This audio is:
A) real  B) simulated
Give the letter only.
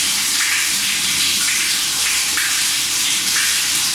B